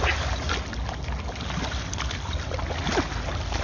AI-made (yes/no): no